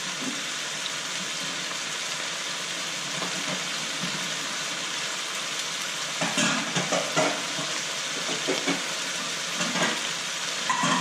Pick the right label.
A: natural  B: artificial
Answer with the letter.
A